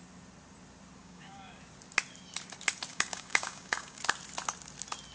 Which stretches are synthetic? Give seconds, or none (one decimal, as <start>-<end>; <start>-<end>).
1.0-1.6; 2.9-4.0